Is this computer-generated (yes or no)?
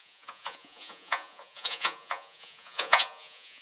yes